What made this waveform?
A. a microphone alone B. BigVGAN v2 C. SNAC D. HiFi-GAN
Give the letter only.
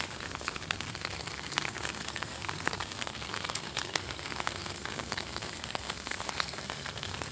C